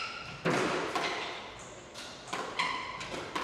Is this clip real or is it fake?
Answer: real